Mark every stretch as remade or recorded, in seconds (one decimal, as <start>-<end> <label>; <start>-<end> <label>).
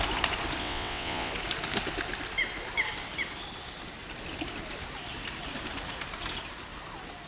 0.0-0.6 recorded; 0.6-1.3 remade; 1.3-7.3 recorded